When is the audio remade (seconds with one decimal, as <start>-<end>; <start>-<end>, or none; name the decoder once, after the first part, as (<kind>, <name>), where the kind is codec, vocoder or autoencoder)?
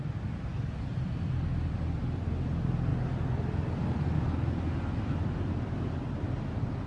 0.0-2.9 (vocoder, BigVGAN v2); 5.5-6.9